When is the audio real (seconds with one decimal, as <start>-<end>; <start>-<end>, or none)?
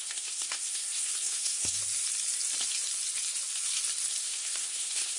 1.8-4.2